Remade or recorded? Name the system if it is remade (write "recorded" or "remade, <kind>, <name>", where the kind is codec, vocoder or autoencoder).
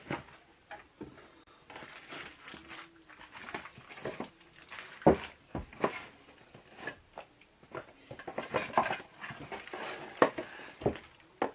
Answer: recorded